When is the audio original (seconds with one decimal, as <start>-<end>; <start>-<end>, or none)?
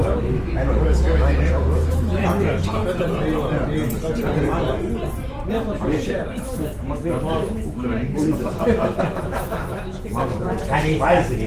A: 2.8-6.0; 10.3-11.5